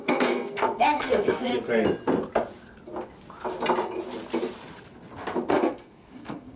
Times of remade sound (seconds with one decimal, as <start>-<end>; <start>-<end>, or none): 0.0-1.5; 5.5-6.6